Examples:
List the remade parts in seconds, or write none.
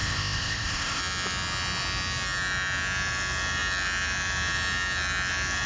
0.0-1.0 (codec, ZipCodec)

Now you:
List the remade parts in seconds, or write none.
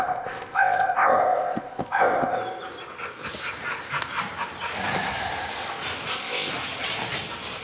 0.0-2.4 (codec, ZipCodec); 6.1-6.5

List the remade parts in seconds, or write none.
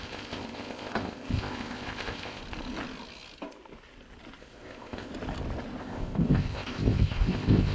0.0-2.4 (codec, ZipCodec); 4.4-5.1; 5.8-7.7